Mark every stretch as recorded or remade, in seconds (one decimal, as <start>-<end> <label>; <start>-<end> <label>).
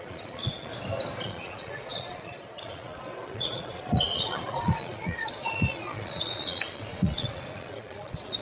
0.0-0.7 remade; 0.7-1.2 recorded; 1.2-8.4 remade